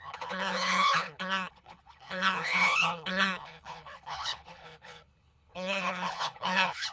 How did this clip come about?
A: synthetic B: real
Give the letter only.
A